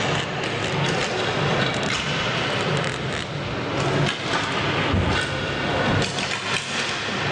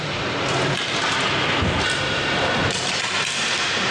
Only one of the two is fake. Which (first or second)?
second